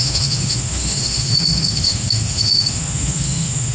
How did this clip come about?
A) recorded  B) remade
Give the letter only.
B